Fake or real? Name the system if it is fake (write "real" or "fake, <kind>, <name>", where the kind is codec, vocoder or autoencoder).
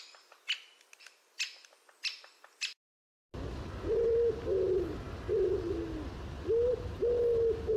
real